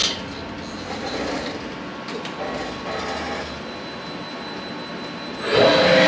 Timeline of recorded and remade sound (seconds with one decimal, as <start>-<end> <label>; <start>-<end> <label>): 0.0-6.1 recorded

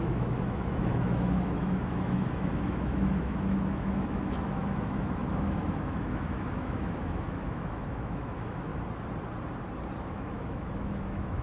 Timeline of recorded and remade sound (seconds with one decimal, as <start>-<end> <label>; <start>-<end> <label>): 0.0-8.7 remade; 8.7-10.0 recorded; 10.0-11.4 remade

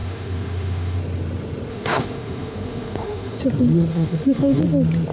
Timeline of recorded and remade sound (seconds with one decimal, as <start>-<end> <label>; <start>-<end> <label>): 0.0-1.0 remade; 1.0-1.7 recorded; 1.7-3.4 remade; 3.4-3.9 recorded; 3.9-4.6 remade; 4.6-5.1 recorded

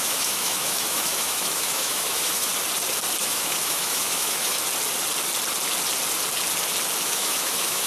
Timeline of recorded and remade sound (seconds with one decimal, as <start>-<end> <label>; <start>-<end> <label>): 0.0-2.5 remade; 2.5-3.2 recorded; 3.2-4.6 remade; 4.6-7.0 recorded; 7.0-7.9 remade

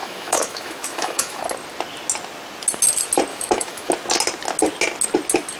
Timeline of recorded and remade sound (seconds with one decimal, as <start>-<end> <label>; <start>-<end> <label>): 0.0-1.4 remade; 1.4-3.3 recorded; 3.3-3.9 remade; 3.9-5.6 recorded

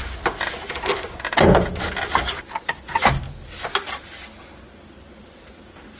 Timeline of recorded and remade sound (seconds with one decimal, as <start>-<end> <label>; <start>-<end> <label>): 0.0-6.0 recorded

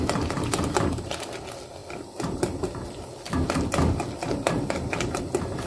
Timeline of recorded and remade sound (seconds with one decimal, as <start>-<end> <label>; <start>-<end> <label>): 0.0-5.7 recorded